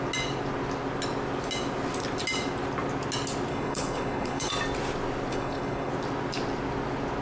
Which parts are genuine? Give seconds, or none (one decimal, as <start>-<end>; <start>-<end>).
0.0-3.5; 4.5-5.3; 5.9-7.2